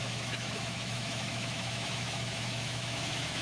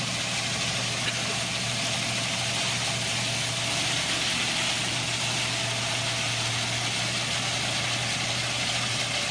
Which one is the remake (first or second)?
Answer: first